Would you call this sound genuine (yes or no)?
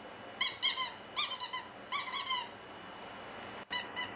yes